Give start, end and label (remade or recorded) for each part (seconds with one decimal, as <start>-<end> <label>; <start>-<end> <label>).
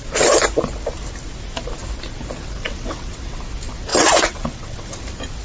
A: 0.0-2.6 recorded; 2.6-3.4 remade; 3.4-3.9 recorded; 3.9-5.0 remade; 5.0-5.4 recorded